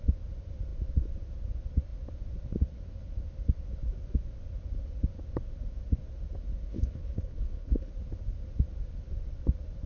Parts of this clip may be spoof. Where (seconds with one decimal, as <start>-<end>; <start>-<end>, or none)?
6.7-7.9